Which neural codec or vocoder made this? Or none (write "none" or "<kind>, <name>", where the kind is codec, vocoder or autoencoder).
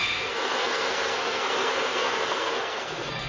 codec, SNAC